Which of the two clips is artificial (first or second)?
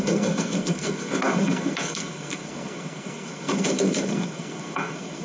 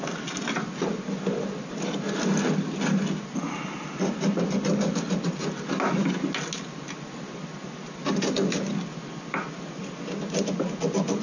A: first